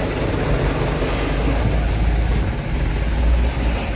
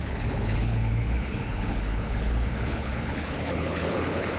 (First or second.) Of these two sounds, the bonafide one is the first